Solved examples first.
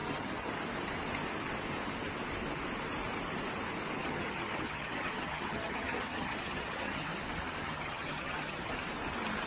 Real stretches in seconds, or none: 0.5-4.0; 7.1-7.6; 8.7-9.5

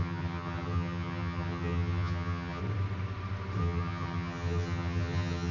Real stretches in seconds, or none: 2.6-3.6

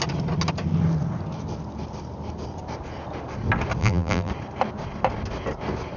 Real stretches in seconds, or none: 0.0-3.8; 4.3-6.0

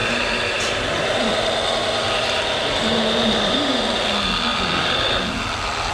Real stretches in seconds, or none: 1.3-1.8; 3.8-5.9

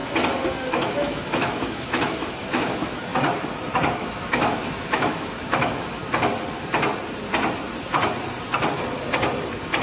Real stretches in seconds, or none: 0.0-0.6; 3.1-3.9; 6.0-9.8

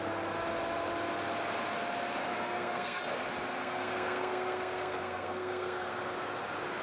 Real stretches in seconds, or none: 0.0-2.3; 3.0-3.6; 5.9-6.8

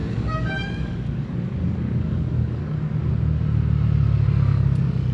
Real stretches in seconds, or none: 3.1-5.1

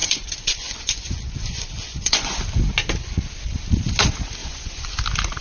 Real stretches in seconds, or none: 2.4-4.4; 5.0-5.4